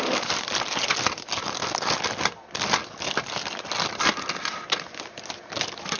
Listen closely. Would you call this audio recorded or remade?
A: recorded